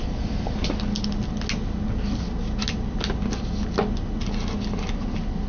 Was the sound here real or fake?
real